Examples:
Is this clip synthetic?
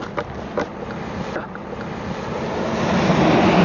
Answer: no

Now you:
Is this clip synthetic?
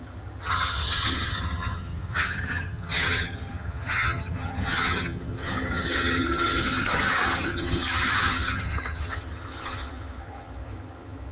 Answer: yes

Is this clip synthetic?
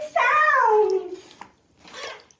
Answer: no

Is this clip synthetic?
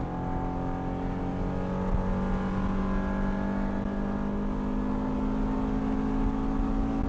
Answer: no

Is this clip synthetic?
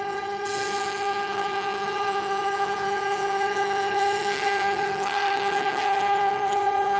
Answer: yes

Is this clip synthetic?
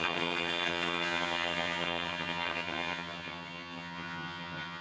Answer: yes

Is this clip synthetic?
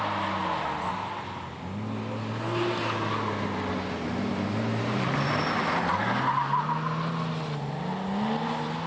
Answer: no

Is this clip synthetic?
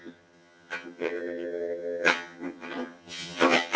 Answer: yes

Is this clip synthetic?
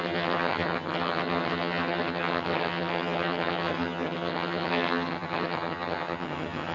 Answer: yes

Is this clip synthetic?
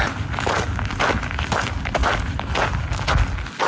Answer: no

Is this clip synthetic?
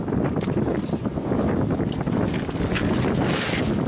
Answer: no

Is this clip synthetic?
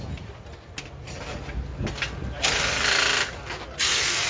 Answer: no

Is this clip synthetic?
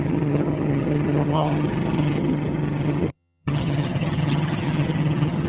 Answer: yes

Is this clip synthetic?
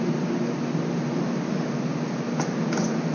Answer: no